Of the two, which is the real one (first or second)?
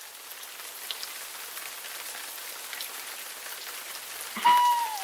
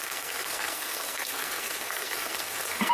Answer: first